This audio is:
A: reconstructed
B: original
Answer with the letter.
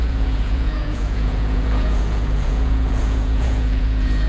A